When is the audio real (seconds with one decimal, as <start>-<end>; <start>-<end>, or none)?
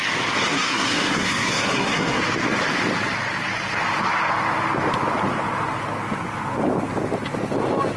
0.0-0.5; 2.2-8.0